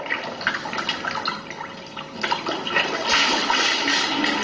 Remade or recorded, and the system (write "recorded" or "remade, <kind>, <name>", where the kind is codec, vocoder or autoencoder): recorded